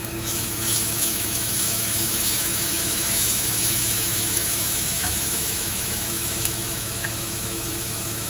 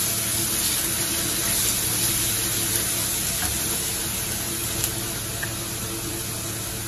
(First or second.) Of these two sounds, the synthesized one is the first